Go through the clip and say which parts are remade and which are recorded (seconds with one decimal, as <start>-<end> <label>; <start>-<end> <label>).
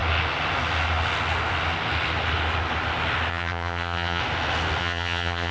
0.0-3.3 recorded; 3.3-4.2 remade; 4.2-4.8 recorded; 4.8-5.5 remade